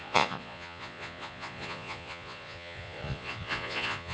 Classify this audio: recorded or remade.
remade